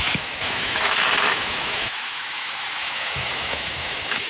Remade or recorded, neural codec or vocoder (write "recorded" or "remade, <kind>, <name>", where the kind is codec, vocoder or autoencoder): remade, autoencoder, DAC-VAE